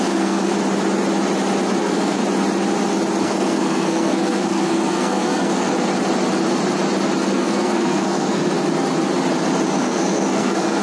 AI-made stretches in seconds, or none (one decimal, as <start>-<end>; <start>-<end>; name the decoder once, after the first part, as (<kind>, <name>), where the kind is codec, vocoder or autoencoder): 0.0-0.5 (codec, SNAC); 1.8-2.2; 3.2-5.7; 7.2-8.4; 9.8-10.8